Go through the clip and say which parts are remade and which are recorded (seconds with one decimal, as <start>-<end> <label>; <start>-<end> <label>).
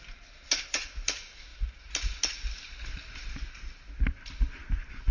0.0-5.1 recorded